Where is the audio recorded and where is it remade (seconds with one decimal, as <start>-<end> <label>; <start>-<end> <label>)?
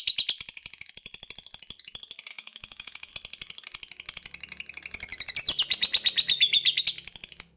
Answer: 0.0-2.3 recorded; 2.3-3.1 remade; 3.1-7.6 recorded